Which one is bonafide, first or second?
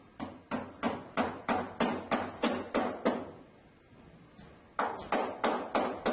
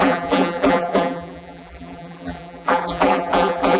first